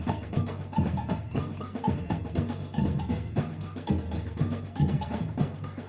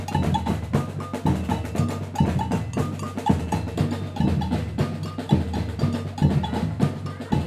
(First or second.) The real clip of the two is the second